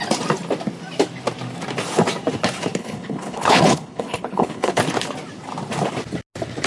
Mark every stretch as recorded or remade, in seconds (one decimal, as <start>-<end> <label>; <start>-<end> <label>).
0.0-2.8 recorded; 2.8-4.8 remade; 4.8-6.7 recorded